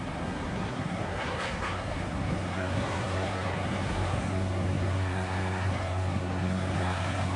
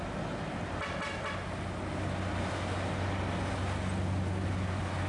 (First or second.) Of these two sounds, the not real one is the first